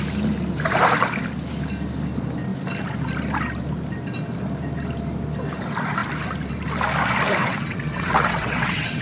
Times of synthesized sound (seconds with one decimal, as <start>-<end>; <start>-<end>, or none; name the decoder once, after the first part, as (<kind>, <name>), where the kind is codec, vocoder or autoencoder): 7.4-9.0 (vocoder, WaveNeXt)